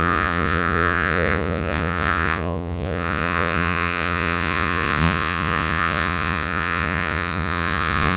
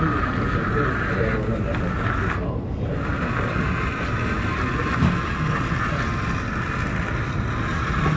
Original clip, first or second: second